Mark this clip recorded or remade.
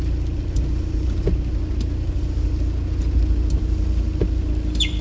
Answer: recorded